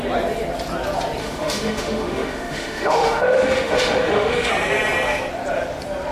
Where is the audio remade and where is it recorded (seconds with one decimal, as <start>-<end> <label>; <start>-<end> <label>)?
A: 0.0-1.2 recorded; 1.2-4.5 remade; 4.5-6.1 recorded